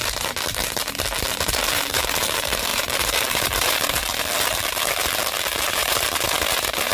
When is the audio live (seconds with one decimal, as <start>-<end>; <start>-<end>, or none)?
0.0-1.4; 4.0-5.7